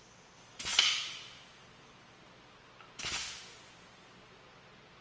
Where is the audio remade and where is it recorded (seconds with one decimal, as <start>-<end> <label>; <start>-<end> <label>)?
0.0-5.0 recorded